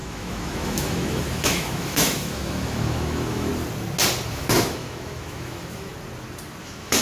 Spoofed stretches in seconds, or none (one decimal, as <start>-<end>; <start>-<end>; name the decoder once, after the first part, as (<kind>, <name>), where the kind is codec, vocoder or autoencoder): 0.0-3.5 (autoencoder, DAC-VAE); 4.3-5.9; 6.6-7.0